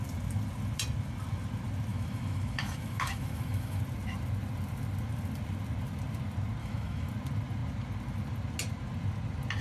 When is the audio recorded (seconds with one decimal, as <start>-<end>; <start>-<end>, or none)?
0.0-1.9; 3.8-6.6; 7.1-9.6

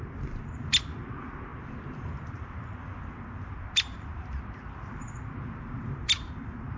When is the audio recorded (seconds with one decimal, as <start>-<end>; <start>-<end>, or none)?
0.0-6.8

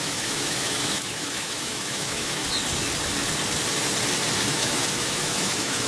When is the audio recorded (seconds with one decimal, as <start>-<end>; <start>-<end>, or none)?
2.4-4.5